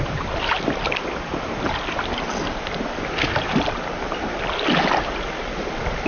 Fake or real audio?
real